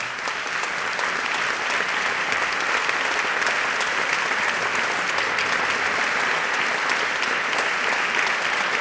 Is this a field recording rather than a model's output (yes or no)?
yes